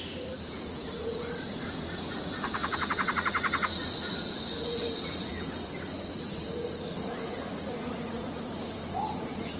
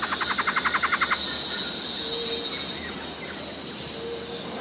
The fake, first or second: first